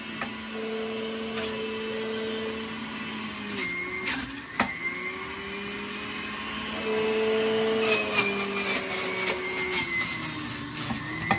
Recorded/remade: recorded